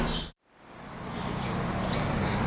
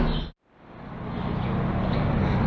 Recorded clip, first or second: second